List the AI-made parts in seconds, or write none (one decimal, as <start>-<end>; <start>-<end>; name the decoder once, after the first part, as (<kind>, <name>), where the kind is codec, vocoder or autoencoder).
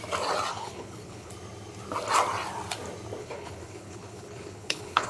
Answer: 0.5-1.3 (codec, HILCodec); 3.2-5.1